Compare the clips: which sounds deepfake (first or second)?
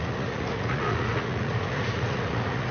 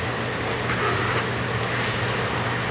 first